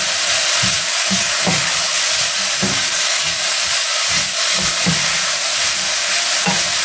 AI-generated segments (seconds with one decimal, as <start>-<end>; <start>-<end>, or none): 0.7-1.9; 2.7-4.7